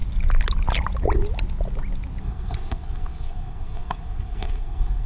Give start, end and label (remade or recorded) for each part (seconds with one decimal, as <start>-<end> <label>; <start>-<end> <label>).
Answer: 0.0-2.2 recorded; 2.2-5.1 remade